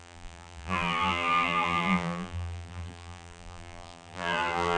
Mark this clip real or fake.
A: fake